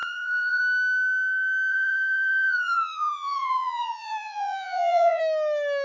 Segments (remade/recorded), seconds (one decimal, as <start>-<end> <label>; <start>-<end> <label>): 0.0-0.6 remade; 0.6-1.7 recorded; 1.7-5.2 remade; 5.2-5.8 recorded